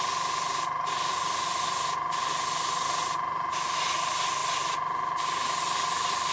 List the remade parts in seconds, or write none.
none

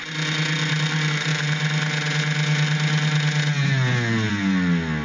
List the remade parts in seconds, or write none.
none

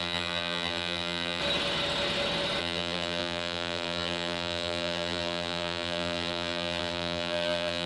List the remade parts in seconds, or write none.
0.0-1.4; 2.6-7.9

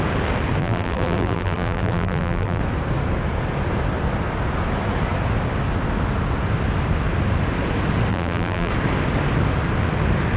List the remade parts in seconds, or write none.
0.6-2.6; 8.1-8.7

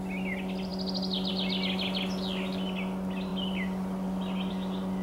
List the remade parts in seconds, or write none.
none

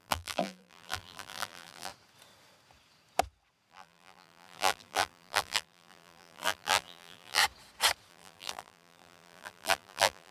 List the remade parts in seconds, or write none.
0.0-1.9; 3.7-7.4; 8.1-10.3